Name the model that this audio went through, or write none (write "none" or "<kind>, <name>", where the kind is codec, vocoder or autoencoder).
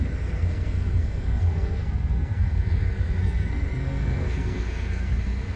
codec, SNAC